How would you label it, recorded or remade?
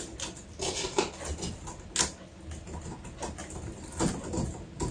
recorded